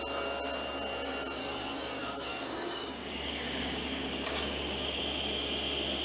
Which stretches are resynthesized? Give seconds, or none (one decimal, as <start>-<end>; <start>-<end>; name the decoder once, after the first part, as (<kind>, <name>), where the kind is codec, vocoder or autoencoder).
1.4-5.0 (codec, DAC)

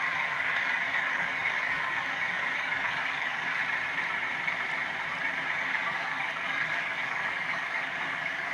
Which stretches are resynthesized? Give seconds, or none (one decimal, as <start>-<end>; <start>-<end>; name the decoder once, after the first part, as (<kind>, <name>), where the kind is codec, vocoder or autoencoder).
0.0-3.6 (codec, DAC); 5.6-8.5

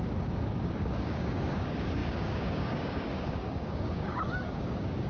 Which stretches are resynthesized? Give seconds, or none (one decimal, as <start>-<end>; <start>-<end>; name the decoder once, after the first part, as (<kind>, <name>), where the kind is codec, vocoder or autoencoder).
0.0-5.1 (codec, DAC)

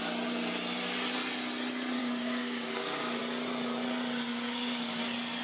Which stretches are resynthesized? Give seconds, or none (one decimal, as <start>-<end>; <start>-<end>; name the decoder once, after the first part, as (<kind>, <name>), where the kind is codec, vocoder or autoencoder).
2.0-3.2 (codec, DAC); 4.3-5.0

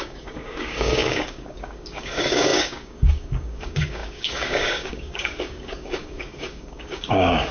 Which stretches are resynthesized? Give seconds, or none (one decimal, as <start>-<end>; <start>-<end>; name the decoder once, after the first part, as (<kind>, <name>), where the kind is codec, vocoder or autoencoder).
0.0-7.5 (codec, DAC)